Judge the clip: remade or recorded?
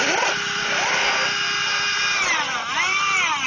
remade